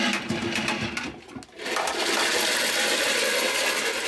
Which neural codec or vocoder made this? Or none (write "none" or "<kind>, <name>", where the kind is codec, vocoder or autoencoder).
none